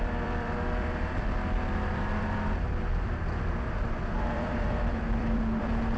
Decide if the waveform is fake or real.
fake